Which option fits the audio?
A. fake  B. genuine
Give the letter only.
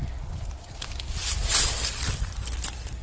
B